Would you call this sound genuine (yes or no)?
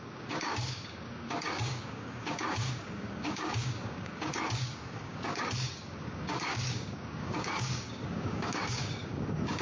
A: no